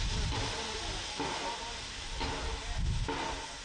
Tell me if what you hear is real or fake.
real